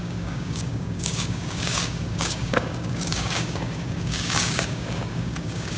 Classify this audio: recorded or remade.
remade